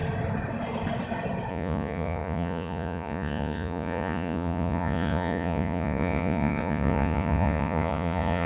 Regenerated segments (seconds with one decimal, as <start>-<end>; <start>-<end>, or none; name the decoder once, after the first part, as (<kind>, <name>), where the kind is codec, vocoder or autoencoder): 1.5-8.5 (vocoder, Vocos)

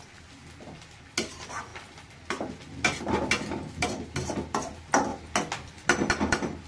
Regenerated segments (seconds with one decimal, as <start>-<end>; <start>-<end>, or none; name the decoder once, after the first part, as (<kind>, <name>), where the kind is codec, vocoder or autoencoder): none

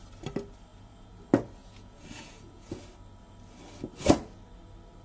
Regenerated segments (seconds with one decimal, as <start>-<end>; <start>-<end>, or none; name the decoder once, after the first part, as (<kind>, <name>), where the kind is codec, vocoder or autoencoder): 0.7-1.2 (vocoder, Vocos); 1.6-2.8

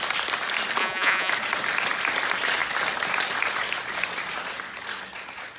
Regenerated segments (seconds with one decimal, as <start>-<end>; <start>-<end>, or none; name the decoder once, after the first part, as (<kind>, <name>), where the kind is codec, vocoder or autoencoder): 0.8-1.3 (vocoder, Vocos)

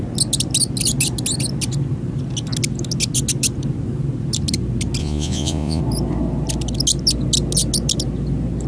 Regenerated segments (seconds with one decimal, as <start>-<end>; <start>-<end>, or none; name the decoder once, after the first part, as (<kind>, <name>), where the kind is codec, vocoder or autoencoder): 5.0-5.8 (vocoder, Vocos)

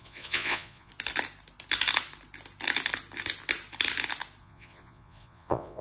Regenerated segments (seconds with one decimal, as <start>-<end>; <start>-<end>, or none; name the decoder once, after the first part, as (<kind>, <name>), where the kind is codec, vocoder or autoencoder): 0.0-0.9 (vocoder, Vocos); 4.4-5.8